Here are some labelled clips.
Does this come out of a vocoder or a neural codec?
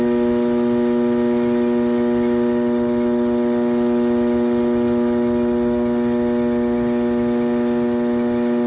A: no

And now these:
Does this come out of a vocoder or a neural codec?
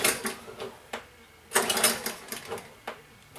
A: no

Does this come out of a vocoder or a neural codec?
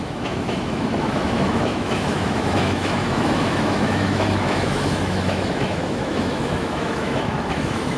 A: yes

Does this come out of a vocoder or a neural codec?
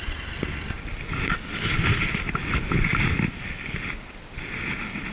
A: no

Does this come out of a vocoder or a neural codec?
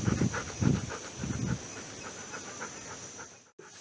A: no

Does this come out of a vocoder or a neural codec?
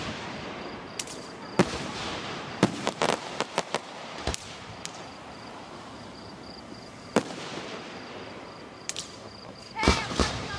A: yes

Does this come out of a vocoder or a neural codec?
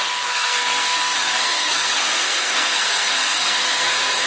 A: yes